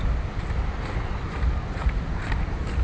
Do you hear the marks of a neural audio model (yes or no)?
no